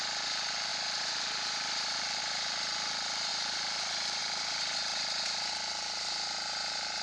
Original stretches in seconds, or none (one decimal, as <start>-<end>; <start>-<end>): 0.0-0.7; 2.2-3.3; 4.2-7.0